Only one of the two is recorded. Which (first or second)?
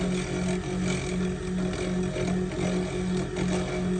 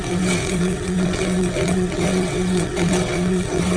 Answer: first